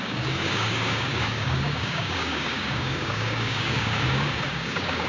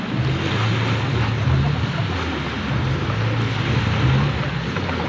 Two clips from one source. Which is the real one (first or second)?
second